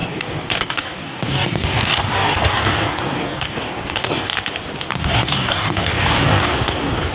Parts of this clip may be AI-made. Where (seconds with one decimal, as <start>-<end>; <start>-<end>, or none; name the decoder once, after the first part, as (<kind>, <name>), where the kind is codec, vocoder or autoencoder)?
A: 0.0-4.3 (codec, DAC); 4.9-7.1